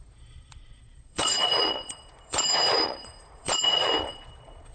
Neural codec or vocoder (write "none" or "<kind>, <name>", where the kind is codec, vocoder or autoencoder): vocoder, Vocos